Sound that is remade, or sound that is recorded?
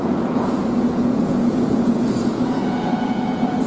remade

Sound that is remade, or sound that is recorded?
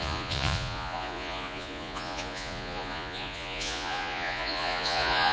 remade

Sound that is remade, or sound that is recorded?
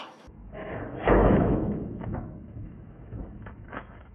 remade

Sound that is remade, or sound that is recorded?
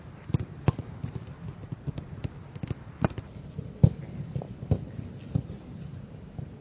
recorded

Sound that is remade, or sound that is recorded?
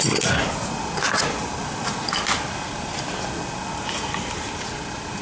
recorded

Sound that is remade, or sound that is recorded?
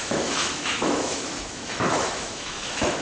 remade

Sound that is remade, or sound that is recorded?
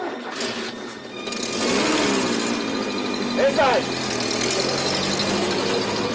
recorded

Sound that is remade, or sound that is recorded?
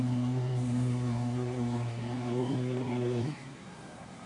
remade